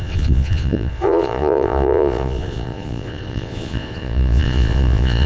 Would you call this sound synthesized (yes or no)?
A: yes